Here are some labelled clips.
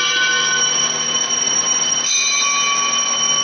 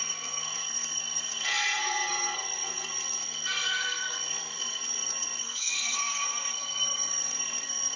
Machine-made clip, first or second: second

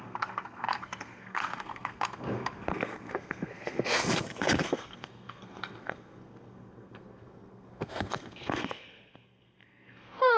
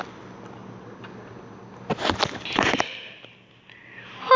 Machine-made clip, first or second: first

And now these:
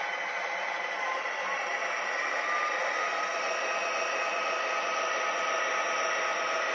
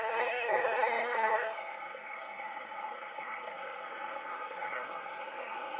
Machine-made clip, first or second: second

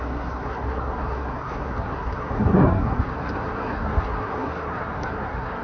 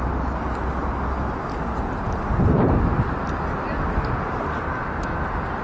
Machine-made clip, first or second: first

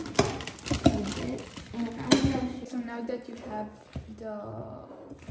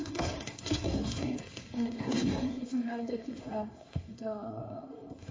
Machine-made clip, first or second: second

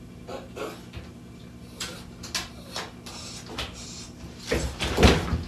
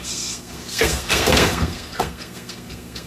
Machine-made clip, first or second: second